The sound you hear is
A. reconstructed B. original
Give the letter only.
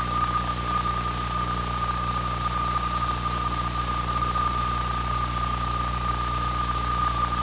B